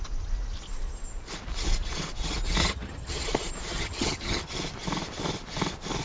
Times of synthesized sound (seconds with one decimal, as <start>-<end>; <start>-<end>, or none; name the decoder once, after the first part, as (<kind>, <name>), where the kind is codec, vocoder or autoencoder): 2.6-3.2 (vocoder, HiFi-GAN); 3.7-4.5